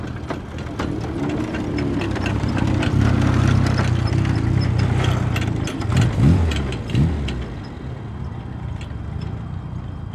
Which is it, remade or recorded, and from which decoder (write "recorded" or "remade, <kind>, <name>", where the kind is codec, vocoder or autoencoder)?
recorded